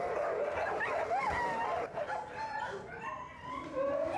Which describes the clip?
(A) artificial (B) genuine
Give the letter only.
B